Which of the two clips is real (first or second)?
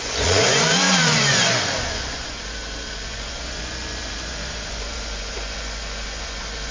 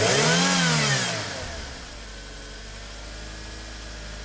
second